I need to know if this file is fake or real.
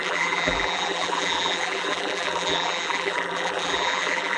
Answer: fake